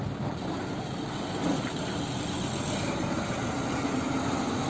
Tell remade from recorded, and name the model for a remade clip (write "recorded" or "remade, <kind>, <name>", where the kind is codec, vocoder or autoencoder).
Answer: recorded